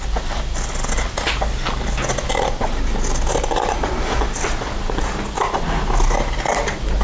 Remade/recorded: recorded